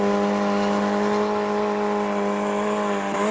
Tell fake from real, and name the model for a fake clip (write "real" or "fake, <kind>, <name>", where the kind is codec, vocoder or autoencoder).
real